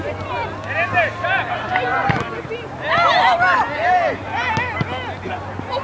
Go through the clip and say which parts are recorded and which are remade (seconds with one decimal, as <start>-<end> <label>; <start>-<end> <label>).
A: 0.0-5.8 recorded